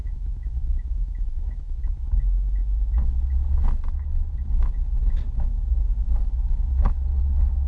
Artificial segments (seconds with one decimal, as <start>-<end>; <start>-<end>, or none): 0.0-1.8